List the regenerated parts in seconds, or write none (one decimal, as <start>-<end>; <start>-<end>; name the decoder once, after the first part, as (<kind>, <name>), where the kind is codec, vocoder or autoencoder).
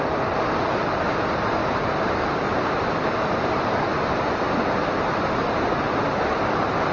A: 1.6-2.6 (vocoder, BigVGAN v2)